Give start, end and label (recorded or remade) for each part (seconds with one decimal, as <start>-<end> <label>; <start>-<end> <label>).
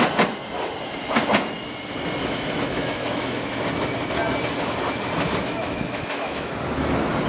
0.0-2.2 recorded; 2.2-3.6 remade; 3.6-5.4 recorded; 5.4-6.5 remade; 6.5-7.3 recorded